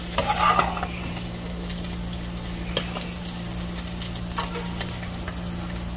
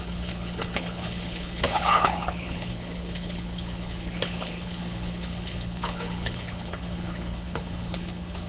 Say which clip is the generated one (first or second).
second